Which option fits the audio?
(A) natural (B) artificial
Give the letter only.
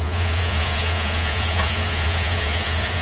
B